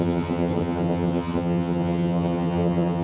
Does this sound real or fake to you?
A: fake